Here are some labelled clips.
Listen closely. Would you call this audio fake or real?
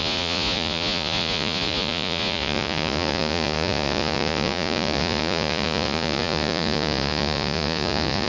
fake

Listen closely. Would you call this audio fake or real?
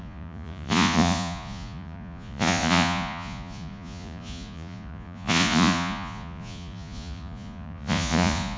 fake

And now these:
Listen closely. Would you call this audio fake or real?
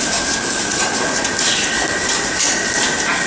real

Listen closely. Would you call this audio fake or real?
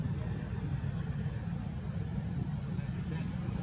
real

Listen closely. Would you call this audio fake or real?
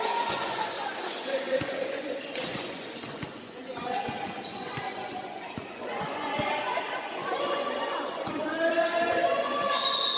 fake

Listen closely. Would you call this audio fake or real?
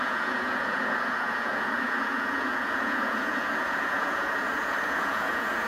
fake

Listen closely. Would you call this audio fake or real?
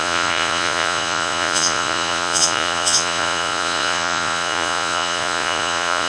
fake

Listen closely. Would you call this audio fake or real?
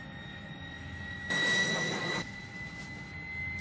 real